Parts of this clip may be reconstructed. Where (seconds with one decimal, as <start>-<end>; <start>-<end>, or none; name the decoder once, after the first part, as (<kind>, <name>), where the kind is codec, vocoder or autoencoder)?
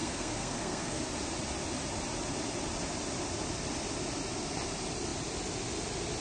0.0-1.0 (codec, SNAC)